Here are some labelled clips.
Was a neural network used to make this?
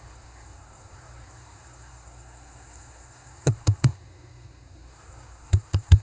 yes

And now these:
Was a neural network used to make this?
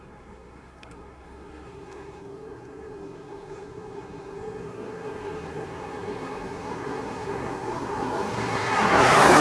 yes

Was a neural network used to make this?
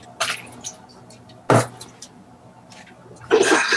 no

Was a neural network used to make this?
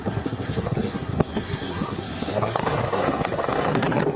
yes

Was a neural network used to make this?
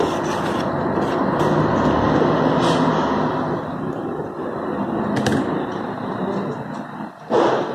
no